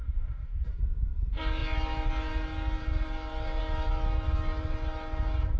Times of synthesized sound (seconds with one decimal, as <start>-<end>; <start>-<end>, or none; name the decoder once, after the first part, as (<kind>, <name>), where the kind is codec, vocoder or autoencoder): 0.0-0.7 (codec, DAC)